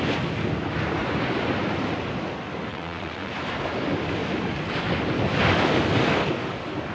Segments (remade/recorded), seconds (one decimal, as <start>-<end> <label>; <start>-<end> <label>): 0.0-2.7 recorded; 2.7-3.3 remade; 3.3-6.9 recorded